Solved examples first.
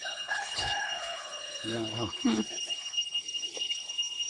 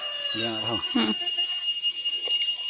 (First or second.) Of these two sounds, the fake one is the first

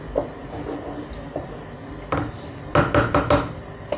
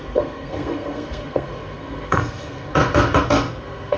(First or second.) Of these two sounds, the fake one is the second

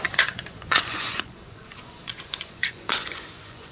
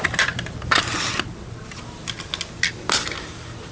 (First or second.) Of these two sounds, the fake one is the first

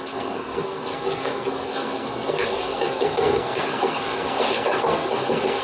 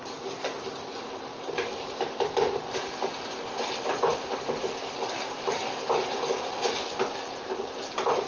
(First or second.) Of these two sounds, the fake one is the first